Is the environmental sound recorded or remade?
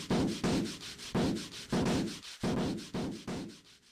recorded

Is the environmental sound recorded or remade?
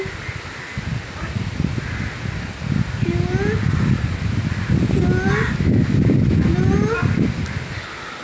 recorded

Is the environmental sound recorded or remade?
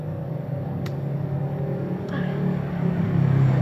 remade